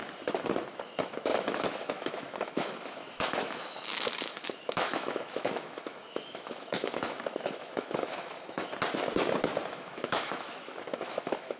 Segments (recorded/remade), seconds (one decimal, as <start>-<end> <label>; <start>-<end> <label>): 0.0-0.7 recorded; 0.7-8.7 remade; 8.7-9.7 recorded; 9.7-11.6 remade